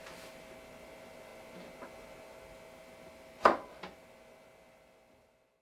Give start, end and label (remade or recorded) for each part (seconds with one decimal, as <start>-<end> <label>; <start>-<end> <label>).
0.0-5.6 recorded